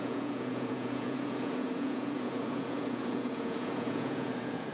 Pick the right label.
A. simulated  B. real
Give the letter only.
A